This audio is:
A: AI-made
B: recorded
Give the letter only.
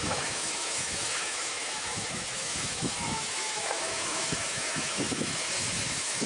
A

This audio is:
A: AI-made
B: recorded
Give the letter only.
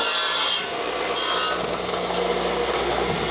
B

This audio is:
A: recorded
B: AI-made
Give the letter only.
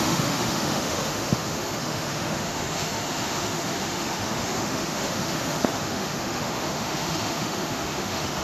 B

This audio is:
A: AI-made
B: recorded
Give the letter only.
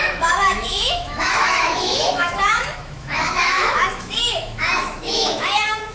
A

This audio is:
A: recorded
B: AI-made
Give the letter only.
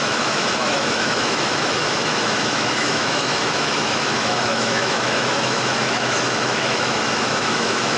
B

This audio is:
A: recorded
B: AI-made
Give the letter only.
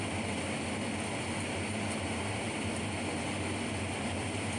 A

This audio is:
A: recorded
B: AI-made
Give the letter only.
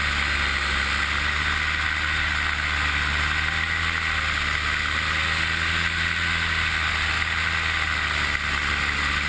A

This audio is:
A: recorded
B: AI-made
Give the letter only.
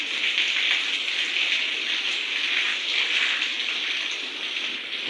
A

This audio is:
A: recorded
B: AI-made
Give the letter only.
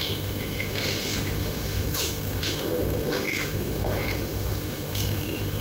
B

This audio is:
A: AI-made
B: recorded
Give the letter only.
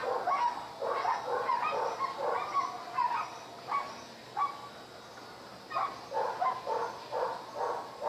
B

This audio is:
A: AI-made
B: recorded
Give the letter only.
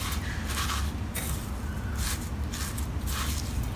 B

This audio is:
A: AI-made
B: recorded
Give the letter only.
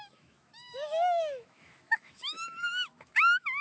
A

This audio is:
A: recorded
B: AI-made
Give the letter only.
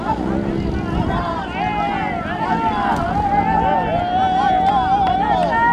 A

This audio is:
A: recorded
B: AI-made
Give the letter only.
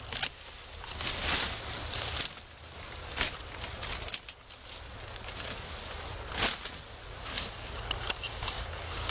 A